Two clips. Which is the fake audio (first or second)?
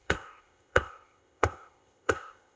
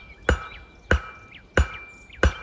first